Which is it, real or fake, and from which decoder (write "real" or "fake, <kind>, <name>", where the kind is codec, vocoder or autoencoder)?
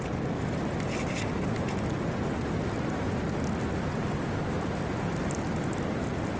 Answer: real